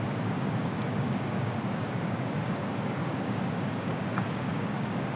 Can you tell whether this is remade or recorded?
remade